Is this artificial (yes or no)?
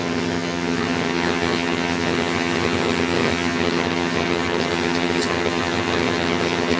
yes